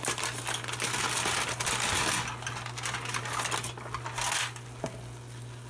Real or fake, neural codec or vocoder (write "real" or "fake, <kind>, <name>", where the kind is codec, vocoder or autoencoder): real